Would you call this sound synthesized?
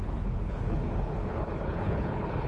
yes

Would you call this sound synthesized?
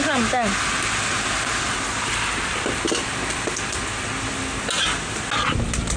no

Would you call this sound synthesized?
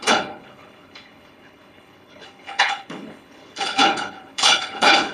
yes